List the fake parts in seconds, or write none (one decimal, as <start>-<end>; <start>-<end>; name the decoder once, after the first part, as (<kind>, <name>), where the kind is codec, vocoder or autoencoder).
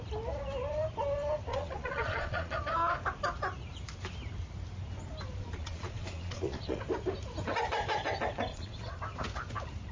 1.5-2.6 (vocoder, Vocos); 5.4-6.8; 8.5-9.0